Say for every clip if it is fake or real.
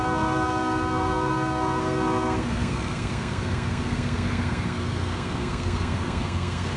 fake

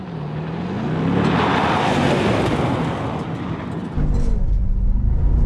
real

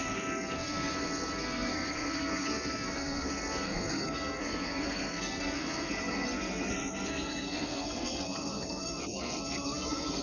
fake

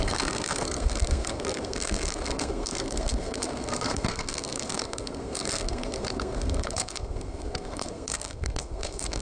fake